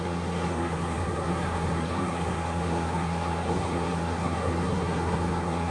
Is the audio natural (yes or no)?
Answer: no